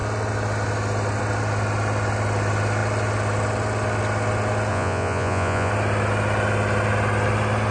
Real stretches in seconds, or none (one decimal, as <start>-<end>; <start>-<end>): 0.0-4.7; 5.7-7.7